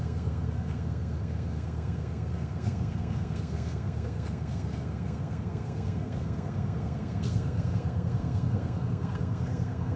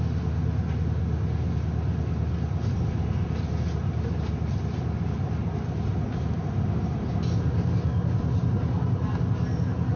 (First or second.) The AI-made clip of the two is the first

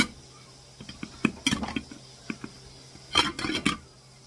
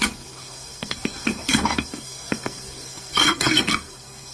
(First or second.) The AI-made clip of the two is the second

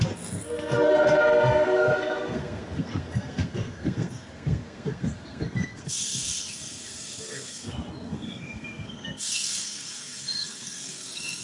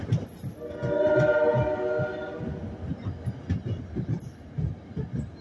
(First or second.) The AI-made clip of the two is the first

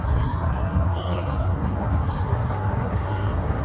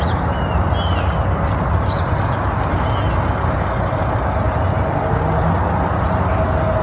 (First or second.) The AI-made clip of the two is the first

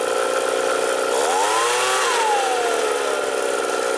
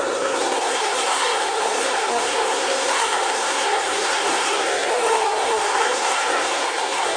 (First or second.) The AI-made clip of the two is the second